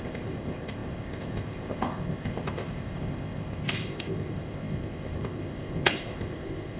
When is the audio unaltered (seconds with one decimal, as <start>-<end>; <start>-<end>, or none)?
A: none